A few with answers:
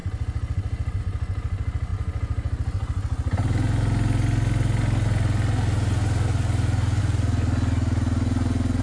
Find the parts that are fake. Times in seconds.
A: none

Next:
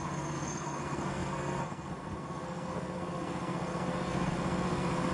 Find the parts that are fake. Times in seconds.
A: 0.0-5.1 (codec, SNAC)

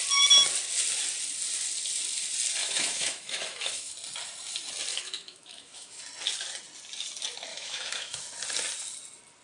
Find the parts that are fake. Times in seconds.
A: 2.6-3.9 (autoencoder, DAC-VAE); 4.9-6.0; 7.5-8.2

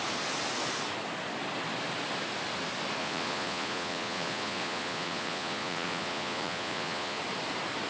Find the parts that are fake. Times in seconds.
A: 3.0-7.2 (vocoder, Vocos)